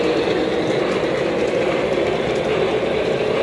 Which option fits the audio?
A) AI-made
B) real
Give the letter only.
B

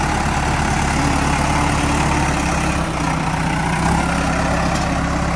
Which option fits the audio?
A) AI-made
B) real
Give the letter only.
B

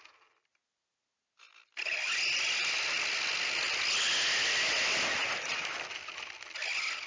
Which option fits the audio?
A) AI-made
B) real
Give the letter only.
B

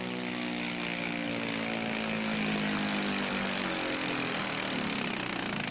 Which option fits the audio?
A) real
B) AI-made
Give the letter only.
A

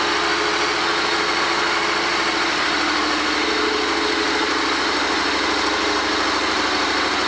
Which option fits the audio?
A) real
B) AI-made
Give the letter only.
A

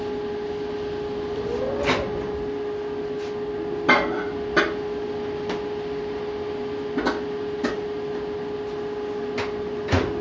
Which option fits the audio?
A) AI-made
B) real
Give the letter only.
B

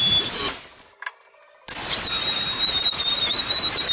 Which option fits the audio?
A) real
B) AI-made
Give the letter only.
A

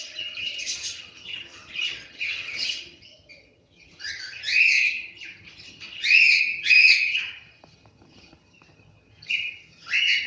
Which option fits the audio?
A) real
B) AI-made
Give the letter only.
B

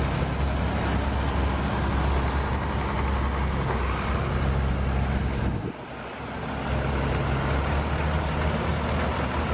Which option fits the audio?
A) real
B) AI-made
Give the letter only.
A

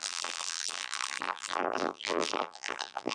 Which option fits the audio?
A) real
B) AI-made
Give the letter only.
B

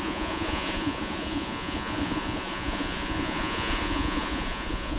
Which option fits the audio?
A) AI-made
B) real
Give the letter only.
A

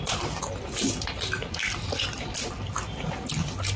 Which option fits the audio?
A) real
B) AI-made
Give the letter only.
B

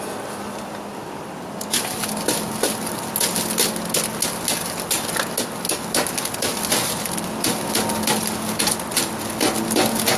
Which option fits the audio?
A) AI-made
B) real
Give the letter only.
B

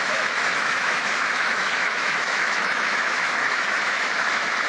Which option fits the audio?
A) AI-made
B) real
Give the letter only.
A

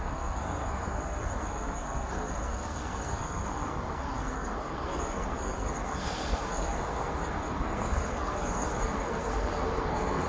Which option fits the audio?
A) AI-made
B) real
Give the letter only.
A